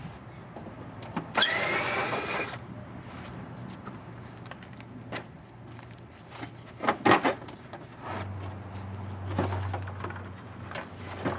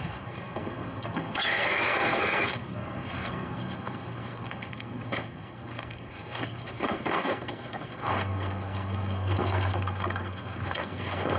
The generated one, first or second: second